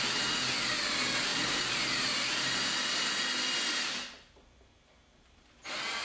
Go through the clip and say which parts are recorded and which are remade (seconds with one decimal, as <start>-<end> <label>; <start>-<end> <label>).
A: 0.0-1.3 recorded; 1.3-2.7 remade; 2.7-6.0 recorded